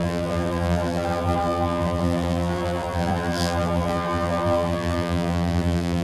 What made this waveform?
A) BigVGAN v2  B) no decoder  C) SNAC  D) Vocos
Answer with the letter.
A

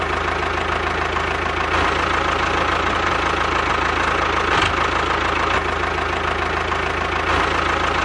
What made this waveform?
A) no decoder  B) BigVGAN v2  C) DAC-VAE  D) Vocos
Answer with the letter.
A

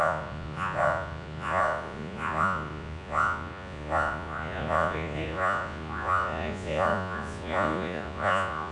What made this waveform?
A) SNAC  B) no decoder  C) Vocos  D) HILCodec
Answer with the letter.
C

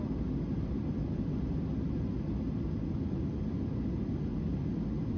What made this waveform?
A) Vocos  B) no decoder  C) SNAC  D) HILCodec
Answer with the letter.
B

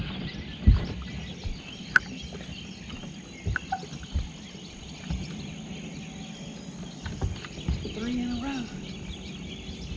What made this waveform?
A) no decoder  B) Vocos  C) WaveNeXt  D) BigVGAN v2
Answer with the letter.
A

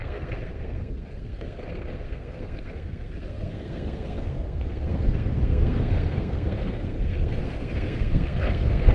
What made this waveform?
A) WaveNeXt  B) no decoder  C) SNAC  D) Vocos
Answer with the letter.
C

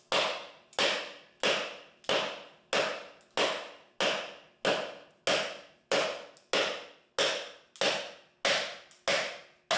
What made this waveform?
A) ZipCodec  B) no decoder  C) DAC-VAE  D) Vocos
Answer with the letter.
B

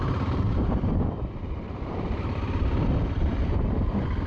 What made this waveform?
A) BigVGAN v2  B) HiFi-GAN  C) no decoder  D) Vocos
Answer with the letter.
C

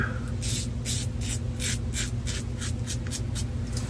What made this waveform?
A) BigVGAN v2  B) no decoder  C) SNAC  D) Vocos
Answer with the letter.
B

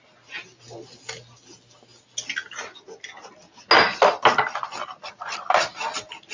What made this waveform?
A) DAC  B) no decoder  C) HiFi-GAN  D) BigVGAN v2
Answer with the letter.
B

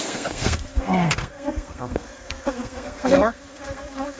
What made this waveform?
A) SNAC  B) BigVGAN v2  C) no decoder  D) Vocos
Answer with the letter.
A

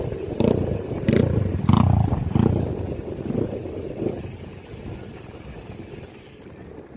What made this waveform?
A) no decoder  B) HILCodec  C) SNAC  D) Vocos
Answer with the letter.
A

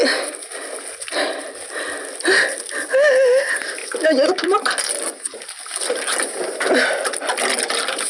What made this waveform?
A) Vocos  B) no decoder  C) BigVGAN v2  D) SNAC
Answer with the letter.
B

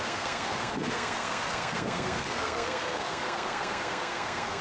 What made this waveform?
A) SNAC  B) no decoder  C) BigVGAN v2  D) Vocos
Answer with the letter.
A